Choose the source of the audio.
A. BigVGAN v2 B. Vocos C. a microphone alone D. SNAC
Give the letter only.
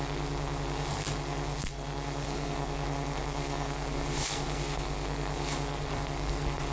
D